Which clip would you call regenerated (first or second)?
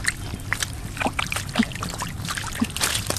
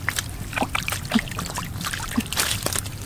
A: second